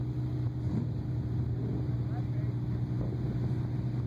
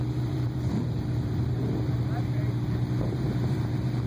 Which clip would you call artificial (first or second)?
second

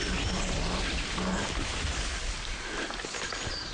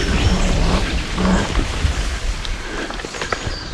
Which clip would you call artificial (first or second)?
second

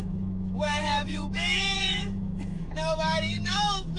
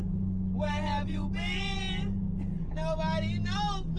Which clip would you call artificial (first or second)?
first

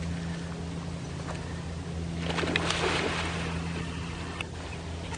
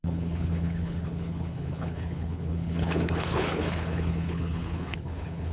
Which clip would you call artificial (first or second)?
second